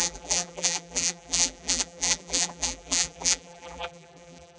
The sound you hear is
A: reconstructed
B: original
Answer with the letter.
A